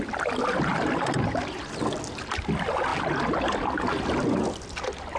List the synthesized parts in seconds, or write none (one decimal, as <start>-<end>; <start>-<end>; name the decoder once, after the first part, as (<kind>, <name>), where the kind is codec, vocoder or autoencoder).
none